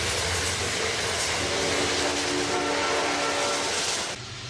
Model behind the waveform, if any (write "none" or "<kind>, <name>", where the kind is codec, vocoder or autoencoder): none